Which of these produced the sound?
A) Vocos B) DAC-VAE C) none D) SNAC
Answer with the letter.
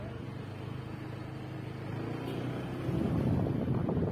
C